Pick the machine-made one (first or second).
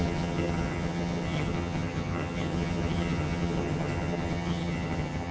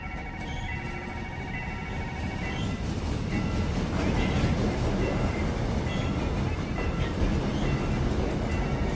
first